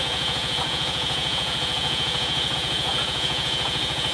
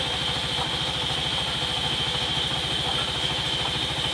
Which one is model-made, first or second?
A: first